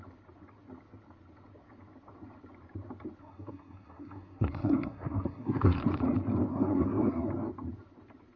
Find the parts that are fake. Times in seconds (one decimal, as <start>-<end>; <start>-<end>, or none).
3.2-5.8; 6.5-7.3